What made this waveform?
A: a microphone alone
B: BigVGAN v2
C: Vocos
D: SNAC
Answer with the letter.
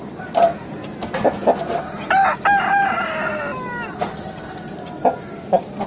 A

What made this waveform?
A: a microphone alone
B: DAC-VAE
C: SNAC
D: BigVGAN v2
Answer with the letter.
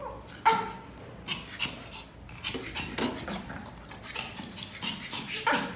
A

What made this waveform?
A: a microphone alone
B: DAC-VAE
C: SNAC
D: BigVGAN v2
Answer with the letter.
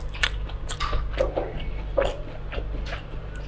A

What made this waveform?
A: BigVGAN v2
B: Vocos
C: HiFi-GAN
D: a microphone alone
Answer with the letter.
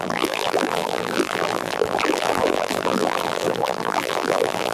A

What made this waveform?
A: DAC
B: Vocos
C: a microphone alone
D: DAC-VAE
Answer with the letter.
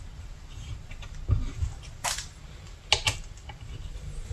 C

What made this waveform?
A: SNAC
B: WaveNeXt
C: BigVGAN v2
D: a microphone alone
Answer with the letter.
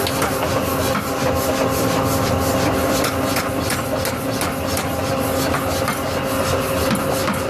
D